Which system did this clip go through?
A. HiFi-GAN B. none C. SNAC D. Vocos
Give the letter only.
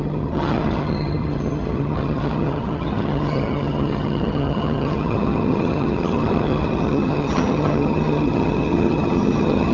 A